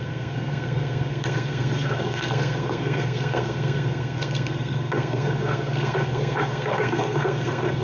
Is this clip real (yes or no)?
no